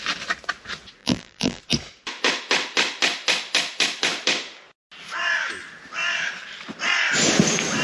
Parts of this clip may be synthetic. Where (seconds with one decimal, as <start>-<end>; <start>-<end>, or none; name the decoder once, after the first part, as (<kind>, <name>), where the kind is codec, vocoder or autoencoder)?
1.0-1.6 (vocoder, BigVGAN v2)